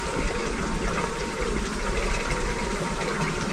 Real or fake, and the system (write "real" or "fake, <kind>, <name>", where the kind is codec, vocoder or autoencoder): fake, vocoder, BigVGAN v2